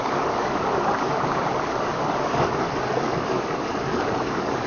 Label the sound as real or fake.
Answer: fake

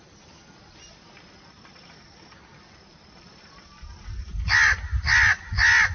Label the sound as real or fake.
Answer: real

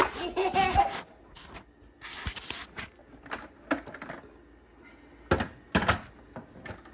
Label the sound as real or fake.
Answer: real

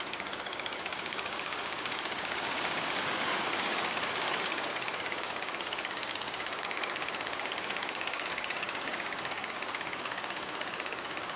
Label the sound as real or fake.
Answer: fake